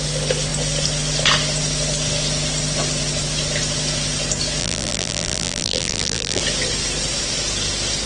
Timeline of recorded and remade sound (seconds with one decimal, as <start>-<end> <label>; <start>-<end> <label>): 0.0-4.6 recorded; 4.6-6.4 remade; 6.4-8.1 recorded